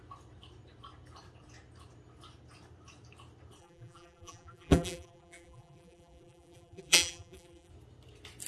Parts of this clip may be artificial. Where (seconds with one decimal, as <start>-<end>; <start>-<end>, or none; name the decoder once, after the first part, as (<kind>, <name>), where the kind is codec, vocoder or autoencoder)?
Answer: 3.6-7.7 (vocoder, BigVGAN v2)